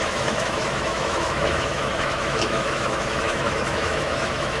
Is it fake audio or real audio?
fake